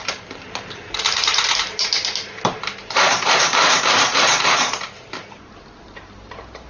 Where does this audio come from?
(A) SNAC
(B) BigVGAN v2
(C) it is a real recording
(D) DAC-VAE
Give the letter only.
B